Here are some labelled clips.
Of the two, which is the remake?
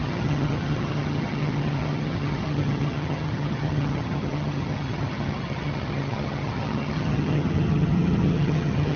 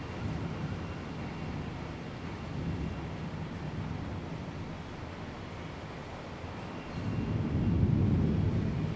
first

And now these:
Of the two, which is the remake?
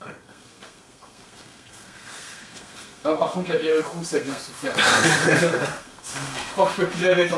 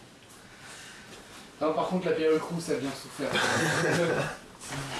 first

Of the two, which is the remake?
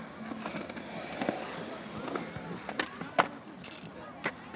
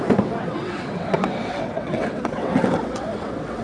second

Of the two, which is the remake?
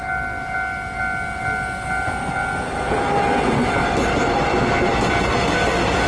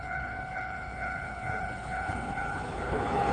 second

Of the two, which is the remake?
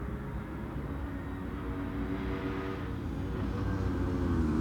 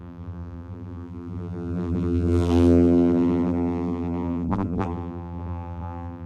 second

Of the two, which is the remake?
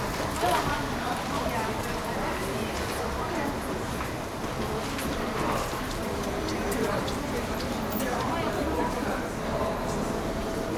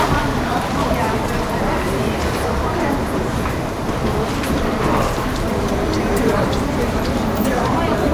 second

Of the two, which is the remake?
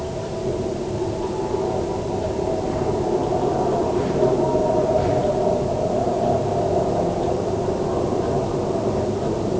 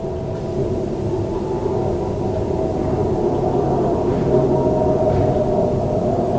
first